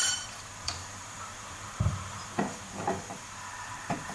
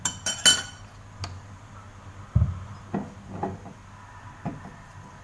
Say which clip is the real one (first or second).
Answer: second